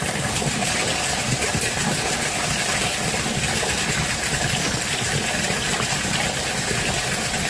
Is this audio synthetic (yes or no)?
no